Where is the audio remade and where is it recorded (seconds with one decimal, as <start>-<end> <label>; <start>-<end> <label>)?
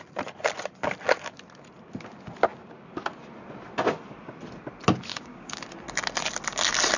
0.0-5.1 recorded; 5.1-5.6 remade; 5.6-7.0 recorded